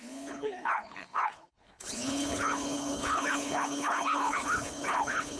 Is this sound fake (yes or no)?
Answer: yes